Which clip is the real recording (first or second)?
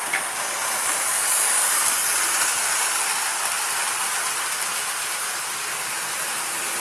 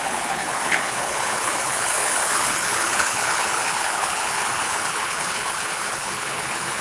first